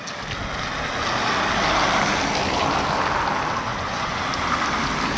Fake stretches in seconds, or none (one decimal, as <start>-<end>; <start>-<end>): 3.7-4.2